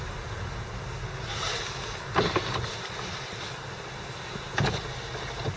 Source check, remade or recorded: recorded